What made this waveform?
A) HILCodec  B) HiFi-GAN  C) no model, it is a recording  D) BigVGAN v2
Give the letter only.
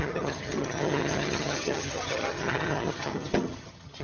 B